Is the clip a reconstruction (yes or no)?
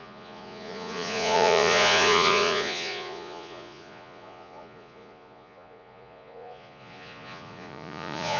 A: yes